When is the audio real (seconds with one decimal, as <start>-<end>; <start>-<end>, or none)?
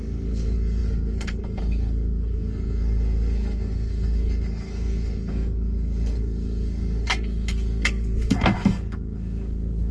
none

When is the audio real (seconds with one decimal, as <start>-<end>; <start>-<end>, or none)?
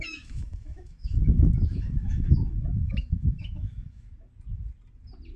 4.1-5.4